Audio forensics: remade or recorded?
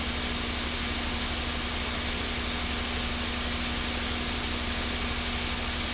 recorded